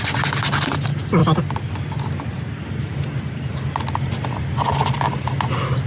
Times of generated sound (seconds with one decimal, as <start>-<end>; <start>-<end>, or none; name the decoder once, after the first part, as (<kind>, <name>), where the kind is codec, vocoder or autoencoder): none